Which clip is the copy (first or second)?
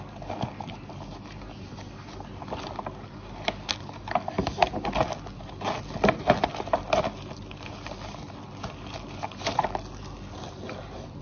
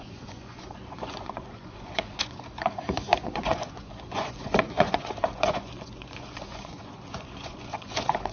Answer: second